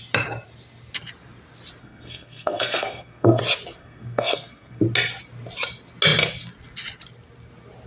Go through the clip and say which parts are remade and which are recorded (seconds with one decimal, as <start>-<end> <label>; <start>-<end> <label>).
0.0-1.8 recorded; 1.8-3.4 remade; 3.4-3.8 recorded; 3.8-4.8 remade; 4.8-7.9 recorded